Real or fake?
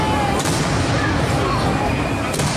real